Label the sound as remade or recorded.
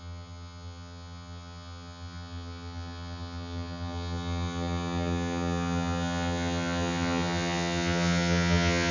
remade